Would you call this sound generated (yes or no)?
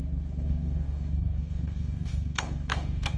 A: yes